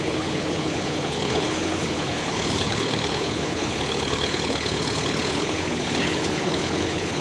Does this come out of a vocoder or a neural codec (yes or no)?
yes